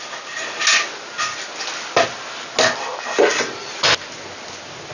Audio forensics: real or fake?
real